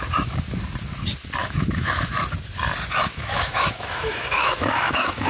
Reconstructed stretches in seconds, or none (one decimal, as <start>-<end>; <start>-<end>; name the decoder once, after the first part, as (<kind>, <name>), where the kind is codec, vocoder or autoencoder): 1.4-2.1 (autoencoder, DAC-VAE); 3.1-5.3